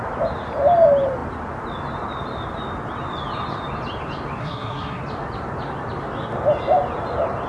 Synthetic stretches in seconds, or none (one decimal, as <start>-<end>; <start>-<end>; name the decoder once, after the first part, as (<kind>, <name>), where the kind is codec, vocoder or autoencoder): 4.4-5.0 (codec, SNAC)